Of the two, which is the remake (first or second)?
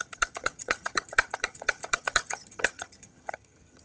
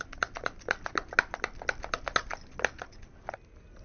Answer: first